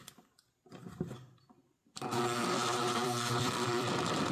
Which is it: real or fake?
fake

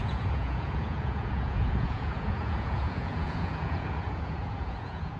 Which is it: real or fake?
fake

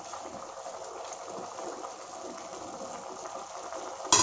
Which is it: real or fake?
real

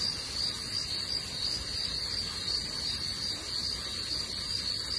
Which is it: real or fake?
real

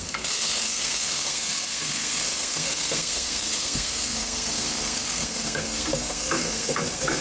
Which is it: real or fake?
fake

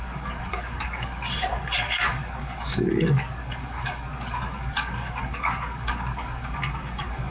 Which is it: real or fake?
fake